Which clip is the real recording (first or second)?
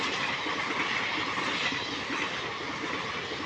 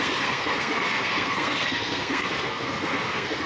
first